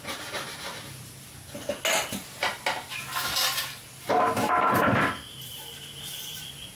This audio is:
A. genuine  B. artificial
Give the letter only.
A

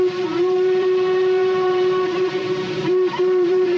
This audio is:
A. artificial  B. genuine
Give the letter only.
A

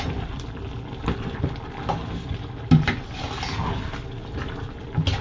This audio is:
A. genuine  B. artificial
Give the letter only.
A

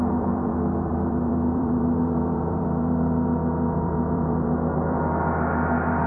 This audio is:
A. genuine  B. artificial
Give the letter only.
B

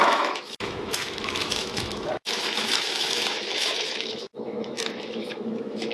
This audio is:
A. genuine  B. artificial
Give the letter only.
B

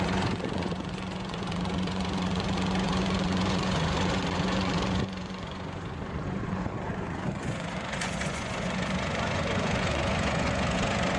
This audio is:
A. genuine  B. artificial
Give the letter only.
B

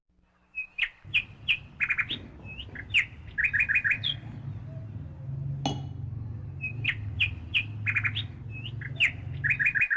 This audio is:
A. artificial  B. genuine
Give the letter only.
B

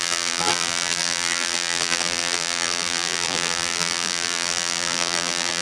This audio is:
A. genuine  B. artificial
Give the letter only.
B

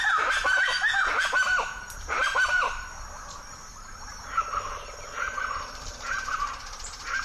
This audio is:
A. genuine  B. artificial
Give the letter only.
B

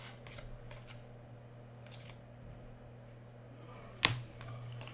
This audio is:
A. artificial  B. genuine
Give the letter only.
B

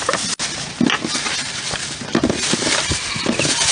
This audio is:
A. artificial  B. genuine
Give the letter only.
B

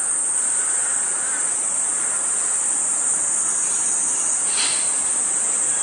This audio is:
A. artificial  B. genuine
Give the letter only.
B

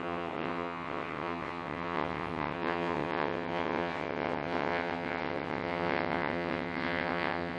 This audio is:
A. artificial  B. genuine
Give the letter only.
A